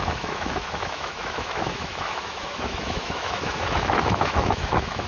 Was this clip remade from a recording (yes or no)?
yes